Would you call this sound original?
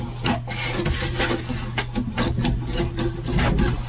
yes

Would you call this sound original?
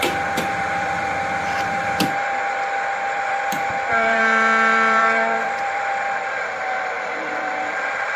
no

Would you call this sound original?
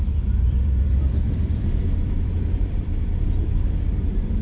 no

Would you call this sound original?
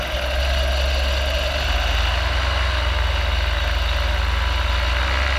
yes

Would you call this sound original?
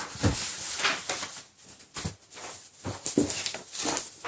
yes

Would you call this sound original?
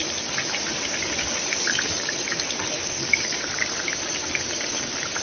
no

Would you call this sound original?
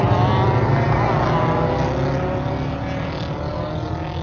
yes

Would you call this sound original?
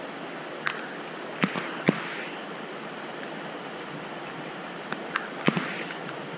yes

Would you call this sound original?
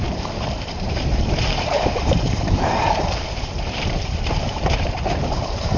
no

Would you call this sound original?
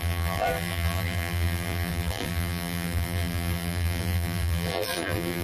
no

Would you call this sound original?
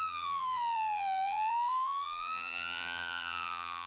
no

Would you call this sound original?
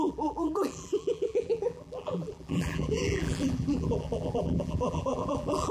no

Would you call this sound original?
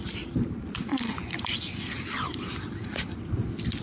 yes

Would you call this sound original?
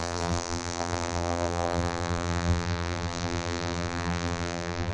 no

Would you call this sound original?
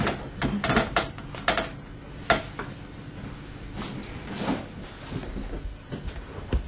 yes